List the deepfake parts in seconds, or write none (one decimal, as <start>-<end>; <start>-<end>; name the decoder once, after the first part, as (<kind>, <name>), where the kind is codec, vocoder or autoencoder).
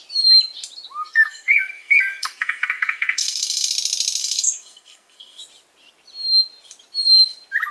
1.0-3.7 (codec, SNAC); 4.2-5.4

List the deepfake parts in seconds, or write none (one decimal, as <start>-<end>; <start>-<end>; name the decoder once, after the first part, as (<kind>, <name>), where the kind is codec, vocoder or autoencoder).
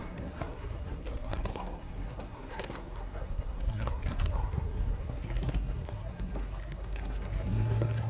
0.0-8.1 (codec, SNAC)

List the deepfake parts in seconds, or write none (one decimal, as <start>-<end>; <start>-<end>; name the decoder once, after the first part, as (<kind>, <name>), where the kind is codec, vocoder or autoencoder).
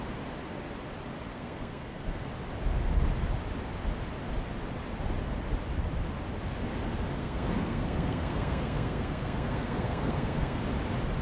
1.3-2.3 (codec, SNAC); 7.2-10.6